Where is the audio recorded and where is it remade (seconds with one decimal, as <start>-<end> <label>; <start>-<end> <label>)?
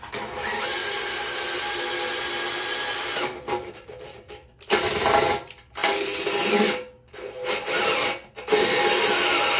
0.0-0.8 remade; 0.8-2.6 recorded; 2.6-5.8 remade; 5.8-9.1 recorded; 9.1-9.6 remade